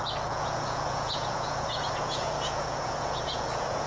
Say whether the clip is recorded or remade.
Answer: remade